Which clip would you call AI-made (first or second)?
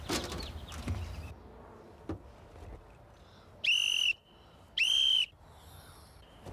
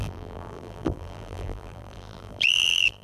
second